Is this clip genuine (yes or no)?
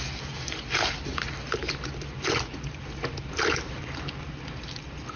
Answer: yes